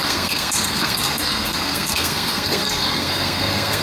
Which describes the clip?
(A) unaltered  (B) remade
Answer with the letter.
B